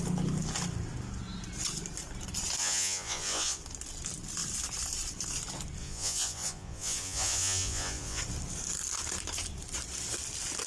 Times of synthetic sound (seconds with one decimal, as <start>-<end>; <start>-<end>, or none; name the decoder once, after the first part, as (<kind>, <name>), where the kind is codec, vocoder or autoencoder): 2.6-3.6 (vocoder, Vocos); 5.8-8.2

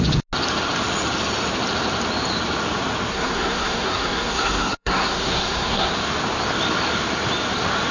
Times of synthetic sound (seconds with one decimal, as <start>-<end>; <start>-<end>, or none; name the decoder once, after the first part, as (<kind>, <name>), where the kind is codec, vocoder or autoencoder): 3.1-5.9 (codec, SNAC)

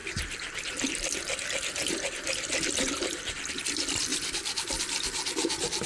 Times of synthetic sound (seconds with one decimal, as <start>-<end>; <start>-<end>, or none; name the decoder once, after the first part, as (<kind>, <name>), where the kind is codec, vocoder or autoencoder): 0.0-3.5 (vocoder, BigVGAN v2); 4.1-4.8

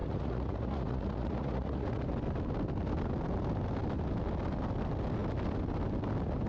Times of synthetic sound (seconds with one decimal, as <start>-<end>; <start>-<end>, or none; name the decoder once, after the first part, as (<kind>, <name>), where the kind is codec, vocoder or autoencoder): 0.0-2.0 (vocoder, Vocos)